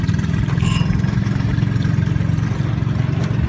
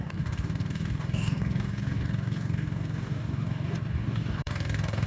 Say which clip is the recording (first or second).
first